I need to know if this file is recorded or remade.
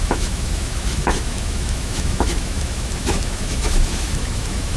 remade